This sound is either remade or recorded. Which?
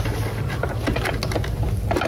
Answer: recorded